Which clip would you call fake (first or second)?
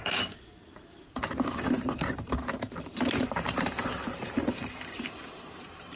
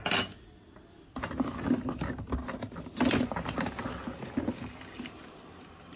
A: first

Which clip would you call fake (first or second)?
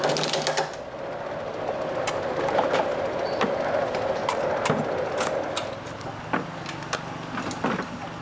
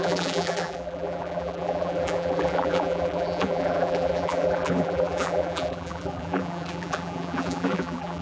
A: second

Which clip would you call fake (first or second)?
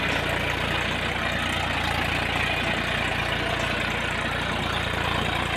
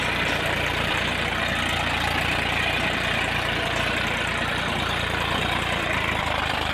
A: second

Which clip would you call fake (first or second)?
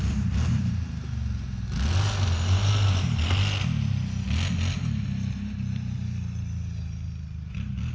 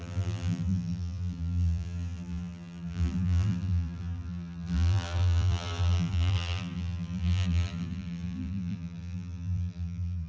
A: second